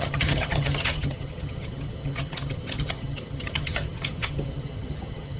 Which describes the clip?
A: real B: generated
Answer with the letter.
B